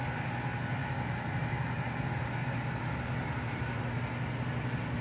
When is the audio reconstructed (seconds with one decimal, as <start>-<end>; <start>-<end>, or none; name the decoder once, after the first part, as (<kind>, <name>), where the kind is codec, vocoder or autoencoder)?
0.8-3.8 (vocoder, BigVGAN v2)